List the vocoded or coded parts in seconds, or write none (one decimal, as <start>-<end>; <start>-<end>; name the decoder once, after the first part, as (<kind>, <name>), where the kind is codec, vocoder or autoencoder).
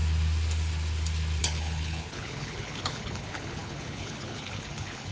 1.4-5.1 (codec, HILCodec)